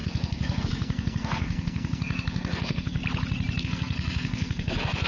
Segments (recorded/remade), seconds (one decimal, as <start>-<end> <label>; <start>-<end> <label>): 0.0-3.0 remade; 3.0-3.6 recorded; 3.6-5.1 remade